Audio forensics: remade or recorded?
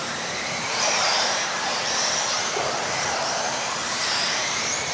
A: remade